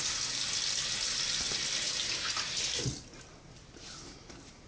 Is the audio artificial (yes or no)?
no